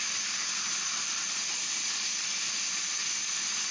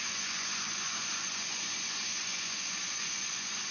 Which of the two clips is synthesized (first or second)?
second